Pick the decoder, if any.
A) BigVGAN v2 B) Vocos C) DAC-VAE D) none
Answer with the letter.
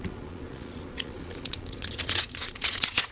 B